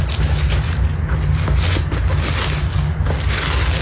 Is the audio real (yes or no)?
yes